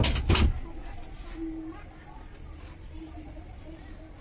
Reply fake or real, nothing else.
real